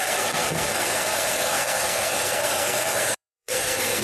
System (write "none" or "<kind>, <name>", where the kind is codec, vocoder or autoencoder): codec, SNAC